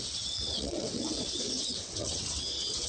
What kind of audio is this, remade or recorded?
remade